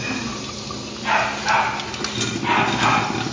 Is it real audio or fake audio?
real